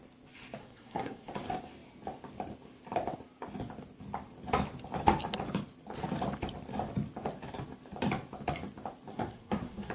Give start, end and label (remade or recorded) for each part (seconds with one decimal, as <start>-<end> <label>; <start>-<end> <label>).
0.0-0.6 recorded; 0.6-1.3 remade; 1.3-9.1 recorded; 9.1-9.9 remade